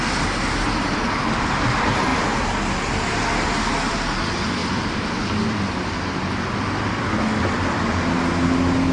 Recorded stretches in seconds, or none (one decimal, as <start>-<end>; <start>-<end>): 0.0-8.9